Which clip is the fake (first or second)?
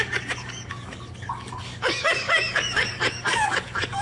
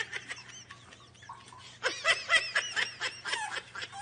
first